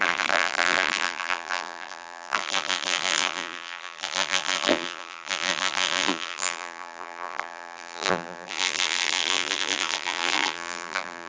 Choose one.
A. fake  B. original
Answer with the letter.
A